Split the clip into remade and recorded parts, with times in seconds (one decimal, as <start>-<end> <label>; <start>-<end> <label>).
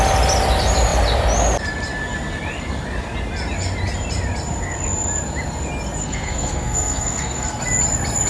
0.0-6.0 recorded; 6.0-7.6 remade; 7.6-8.3 recorded